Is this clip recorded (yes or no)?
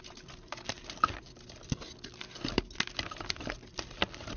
yes